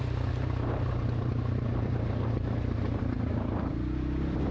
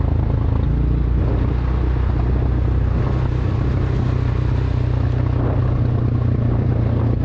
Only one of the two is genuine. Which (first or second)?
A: second